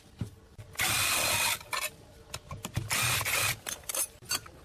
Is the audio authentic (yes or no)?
yes